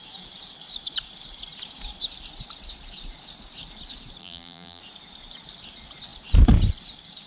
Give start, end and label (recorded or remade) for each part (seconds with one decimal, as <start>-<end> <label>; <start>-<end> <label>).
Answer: 0.0-4.2 recorded; 4.2-4.8 remade; 4.8-7.3 recorded